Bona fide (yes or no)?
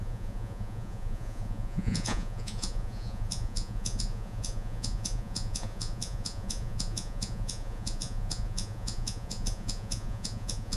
no